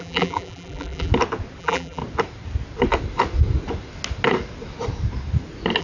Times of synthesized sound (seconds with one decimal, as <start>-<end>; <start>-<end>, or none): 0.0-1.1; 1.6-2.0